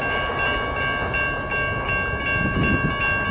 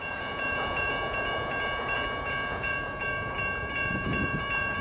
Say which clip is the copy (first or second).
second